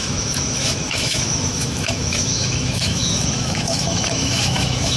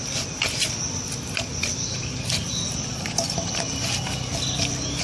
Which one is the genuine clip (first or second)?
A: second